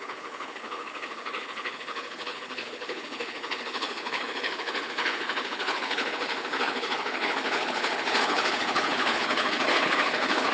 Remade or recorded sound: remade